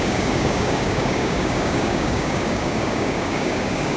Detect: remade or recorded remade